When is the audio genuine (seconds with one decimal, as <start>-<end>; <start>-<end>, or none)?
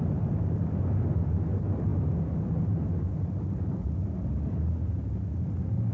1.9-3.1; 3.8-4.3